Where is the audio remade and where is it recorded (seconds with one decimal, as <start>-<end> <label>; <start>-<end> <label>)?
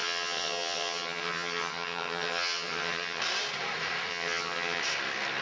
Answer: 0.0-3.2 remade; 3.2-4.1 recorded; 4.1-4.8 remade; 4.8-5.4 recorded